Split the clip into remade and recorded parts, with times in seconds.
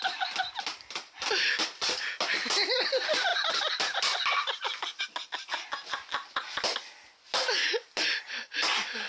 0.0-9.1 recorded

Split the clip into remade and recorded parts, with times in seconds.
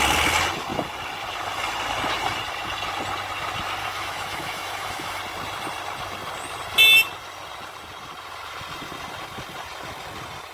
0.0-3.8 recorded; 3.8-5.2 remade; 5.2-10.5 recorded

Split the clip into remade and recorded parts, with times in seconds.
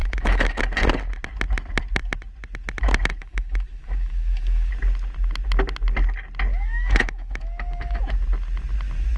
0.0-0.6 remade; 0.6-3.2 recorded; 3.2-4.7 remade; 4.7-6.5 recorded; 6.5-8.0 remade; 8.0-9.2 recorded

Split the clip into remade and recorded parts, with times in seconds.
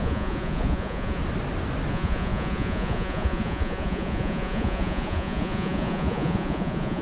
0.0-1.2 remade; 1.2-1.9 recorded; 1.9-7.0 remade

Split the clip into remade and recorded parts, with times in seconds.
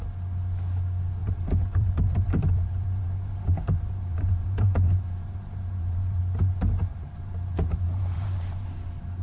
0.0-1.2 recorded; 1.2-6.2 remade; 6.2-6.9 recorded; 6.9-9.2 remade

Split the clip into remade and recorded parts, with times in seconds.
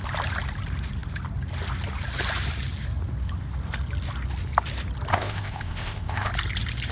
0.0-5.1 recorded; 5.1-6.3 remade; 6.3-6.9 recorded